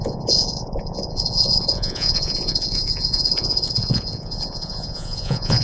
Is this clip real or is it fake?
fake